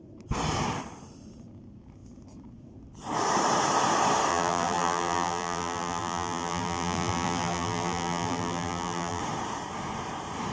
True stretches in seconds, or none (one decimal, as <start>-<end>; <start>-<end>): 0.0-4.3; 9.2-10.5

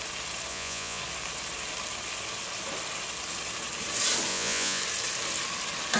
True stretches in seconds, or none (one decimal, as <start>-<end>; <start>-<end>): 0.0-0.5; 1.0-4.3; 4.8-6.0

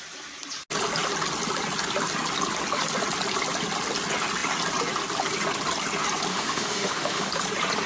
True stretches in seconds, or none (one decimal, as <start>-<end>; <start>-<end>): 0.0-6.3; 7.3-7.9

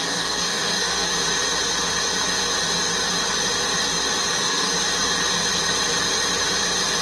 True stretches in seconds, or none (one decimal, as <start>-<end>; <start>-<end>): 1.1-4.3; 4.7-7.0

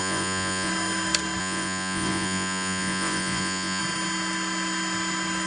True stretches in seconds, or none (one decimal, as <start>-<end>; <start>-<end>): 0.7-1.4; 3.8-5.5

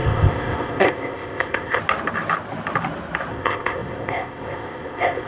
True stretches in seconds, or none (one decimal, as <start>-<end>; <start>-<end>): 1.8-3.3